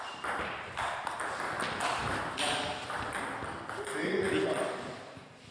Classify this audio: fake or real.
real